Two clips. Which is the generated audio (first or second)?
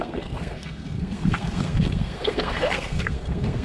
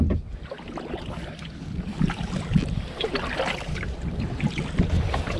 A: first